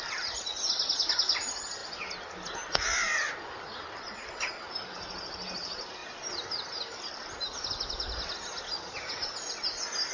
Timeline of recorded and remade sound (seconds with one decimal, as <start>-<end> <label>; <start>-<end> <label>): 0.0-10.1 recorded